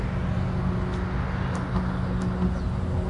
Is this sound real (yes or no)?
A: yes